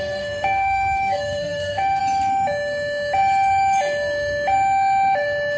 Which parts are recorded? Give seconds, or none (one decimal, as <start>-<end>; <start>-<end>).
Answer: 2.0-5.6